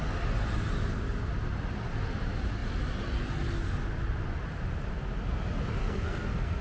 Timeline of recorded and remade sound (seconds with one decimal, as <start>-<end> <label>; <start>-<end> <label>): 0.0-5.8 recorded; 5.8-6.6 remade